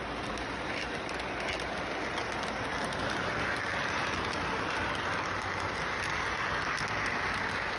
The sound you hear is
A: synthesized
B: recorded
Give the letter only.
B